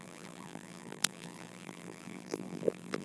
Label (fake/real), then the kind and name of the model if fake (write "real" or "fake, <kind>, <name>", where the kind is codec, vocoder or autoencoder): fake, vocoder, BigVGAN v2